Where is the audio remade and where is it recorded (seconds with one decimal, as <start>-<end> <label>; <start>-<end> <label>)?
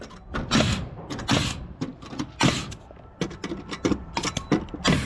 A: 0.0-5.1 recorded